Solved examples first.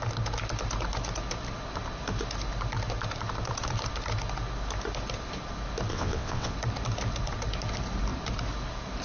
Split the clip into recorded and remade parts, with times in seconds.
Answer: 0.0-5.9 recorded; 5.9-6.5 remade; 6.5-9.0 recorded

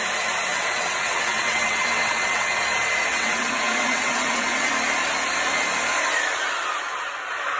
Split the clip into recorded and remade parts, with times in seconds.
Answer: 0.0-0.5 recorded; 0.5-2.6 remade; 2.6-3.1 recorded; 3.1-4.7 remade; 4.7-7.6 recorded

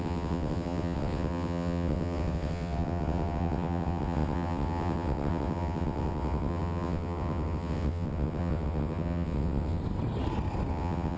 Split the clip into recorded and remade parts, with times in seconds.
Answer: 0.0-9.8 remade; 9.8-10.7 recorded; 10.7-11.2 remade

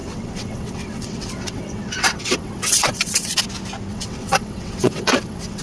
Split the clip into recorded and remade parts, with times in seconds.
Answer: 0.0-3.4 remade; 3.4-3.9 recorded; 3.9-5.6 remade

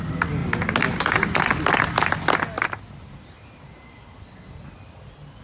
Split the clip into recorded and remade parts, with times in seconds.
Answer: 0.0-5.4 recorded